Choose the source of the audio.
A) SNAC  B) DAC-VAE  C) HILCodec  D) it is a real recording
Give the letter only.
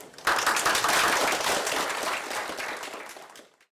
D